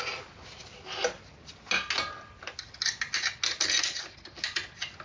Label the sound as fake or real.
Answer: real